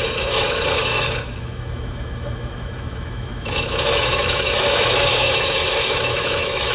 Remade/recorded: remade